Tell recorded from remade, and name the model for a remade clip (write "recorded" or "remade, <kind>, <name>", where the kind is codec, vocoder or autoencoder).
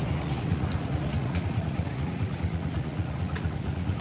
remade, vocoder, Vocos